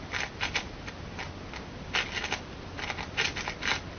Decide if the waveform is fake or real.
real